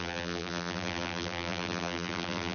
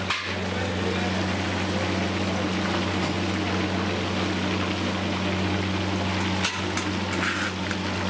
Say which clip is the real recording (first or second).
second